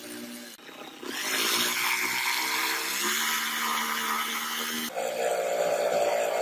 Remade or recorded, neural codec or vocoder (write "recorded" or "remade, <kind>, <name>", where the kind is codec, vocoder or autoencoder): recorded